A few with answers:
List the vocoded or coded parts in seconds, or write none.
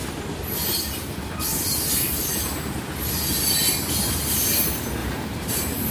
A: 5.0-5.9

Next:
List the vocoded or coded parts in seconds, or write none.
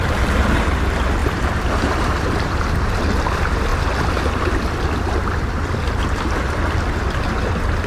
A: 0.0-3.7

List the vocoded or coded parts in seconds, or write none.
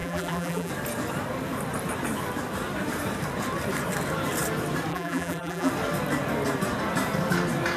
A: 0.0-0.7; 4.9-5.7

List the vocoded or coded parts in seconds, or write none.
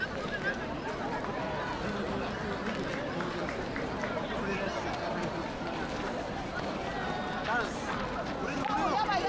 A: 3.4-6.6